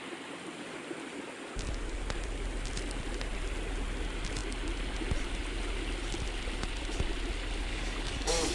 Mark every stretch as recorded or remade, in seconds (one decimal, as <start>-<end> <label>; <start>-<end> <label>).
0.0-7.7 recorded; 7.7-8.5 remade